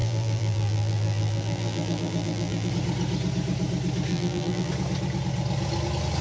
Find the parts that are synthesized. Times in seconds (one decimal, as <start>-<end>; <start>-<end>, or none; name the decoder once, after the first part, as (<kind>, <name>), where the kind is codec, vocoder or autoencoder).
0.0-2.7 (vocoder, BigVGAN v2); 4.1-4.7